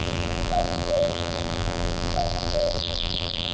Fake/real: fake